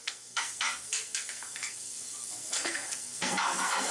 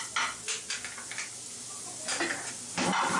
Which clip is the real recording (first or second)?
second